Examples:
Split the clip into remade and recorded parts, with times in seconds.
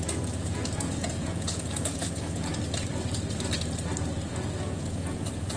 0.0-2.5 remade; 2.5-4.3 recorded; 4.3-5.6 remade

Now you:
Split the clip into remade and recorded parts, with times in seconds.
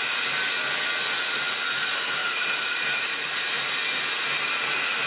0.0-2.2 recorded; 2.2-4.0 remade; 4.0-5.1 recorded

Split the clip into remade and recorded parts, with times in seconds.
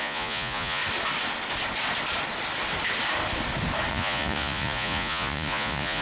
0.0-0.8 remade; 0.8-3.9 recorded; 3.9-6.0 remade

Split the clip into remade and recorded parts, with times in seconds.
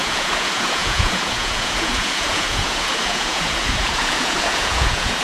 0.0-5.2 remade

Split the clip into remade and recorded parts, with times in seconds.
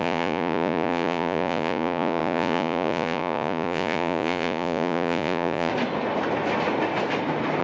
0.0-5.7 remade; 5.7-7.6 recorded